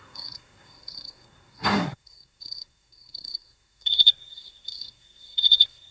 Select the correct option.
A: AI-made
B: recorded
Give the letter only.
A